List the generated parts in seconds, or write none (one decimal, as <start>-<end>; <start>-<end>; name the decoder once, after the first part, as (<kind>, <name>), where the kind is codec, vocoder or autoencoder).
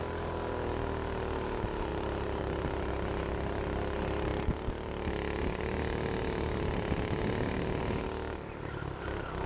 1.9-2.9 (vocoder, BigVGAN v2)